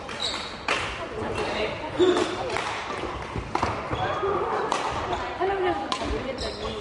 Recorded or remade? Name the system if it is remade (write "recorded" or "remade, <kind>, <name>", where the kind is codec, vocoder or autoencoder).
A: recorded